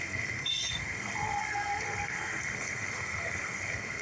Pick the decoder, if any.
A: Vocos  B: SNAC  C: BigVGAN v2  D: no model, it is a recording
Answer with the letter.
B